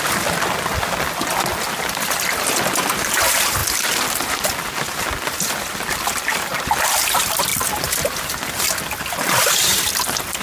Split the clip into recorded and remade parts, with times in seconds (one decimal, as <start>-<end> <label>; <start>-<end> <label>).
0.0-10.4 recorded